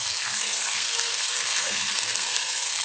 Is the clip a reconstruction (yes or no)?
yes